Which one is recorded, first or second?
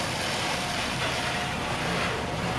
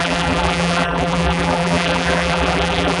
first